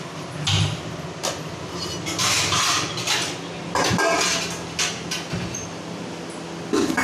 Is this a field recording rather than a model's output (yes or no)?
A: yes